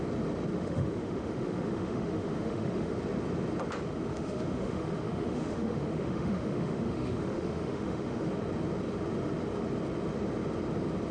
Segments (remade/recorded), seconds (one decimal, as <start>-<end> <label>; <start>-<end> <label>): 0.0-0.5 recorded; 0.5-3.0 remade; 3.0-4.1 recorded; 4.1-8.3 remade; 8.3-11.1 recorded

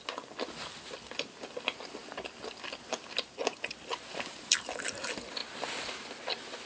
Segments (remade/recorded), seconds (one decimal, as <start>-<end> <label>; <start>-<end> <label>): 0.0-6.7 recorded

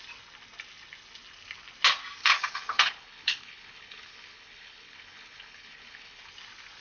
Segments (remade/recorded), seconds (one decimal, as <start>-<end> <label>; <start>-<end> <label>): 0.0-2.2 recorded; 2.2-6.3 remade; 6.3-6.8 recorded

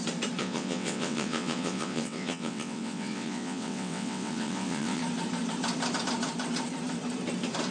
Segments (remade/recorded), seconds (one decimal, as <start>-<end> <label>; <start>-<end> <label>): 0.0-0.4 recorded; 0.4-5.0 remade; 5.0-7.7 recorded

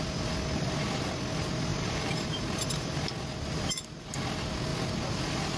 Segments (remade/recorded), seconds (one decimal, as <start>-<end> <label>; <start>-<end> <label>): 0.0-5.6 recorded

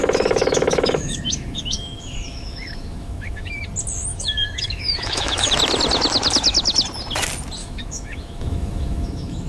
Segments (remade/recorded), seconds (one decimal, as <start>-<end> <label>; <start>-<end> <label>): 0.0-3.6 remade; 3.6-4.1 recorded; 4.1-5.5 remade; 5.5-7.6 recorded; 7.6-9.5 remade

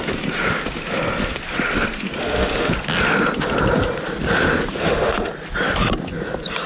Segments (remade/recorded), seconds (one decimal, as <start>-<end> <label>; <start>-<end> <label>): 0.0-2.2 recorded; 2.2-2.7 remade; 2.7-4.8 recorded; 4.8-5.3 remade; 5.3-6.7 recorded

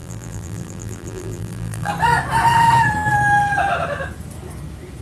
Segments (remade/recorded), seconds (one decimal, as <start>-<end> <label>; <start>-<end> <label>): 0.0-1.9 remade; 1.9-5.0 recorded